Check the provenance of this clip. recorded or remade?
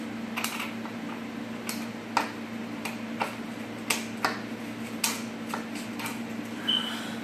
recorded